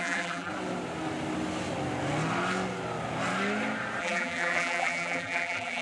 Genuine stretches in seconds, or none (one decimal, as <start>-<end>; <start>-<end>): 0.5-4.0